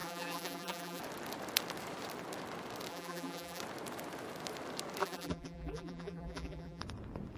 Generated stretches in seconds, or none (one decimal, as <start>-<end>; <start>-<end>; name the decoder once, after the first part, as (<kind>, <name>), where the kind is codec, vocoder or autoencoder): 0.0-1.0 (vocoder, BigVGAN v2); 2.9-3.6; 5.0-6.8